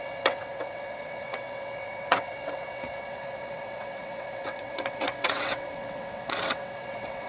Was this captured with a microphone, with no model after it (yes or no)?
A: no